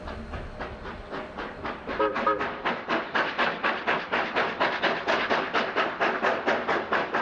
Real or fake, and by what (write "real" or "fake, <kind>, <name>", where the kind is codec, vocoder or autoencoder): real